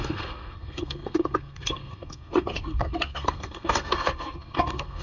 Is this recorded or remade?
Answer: remade